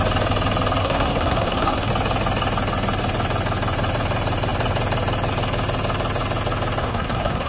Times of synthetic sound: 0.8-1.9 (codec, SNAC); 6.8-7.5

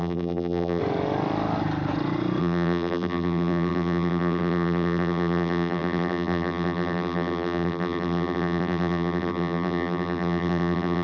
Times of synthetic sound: 0.0-0.8 (vocoder, BigVGAN v2); 2.4-11.0